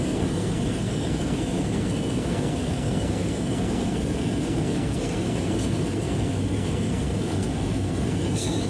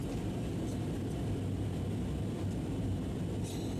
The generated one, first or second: first